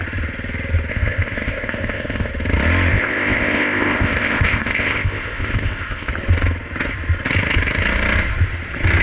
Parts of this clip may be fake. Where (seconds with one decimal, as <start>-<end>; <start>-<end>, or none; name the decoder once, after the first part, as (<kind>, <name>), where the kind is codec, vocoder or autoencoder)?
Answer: 0.9-2.3 (codec, ZipCodec); 2.9-6.1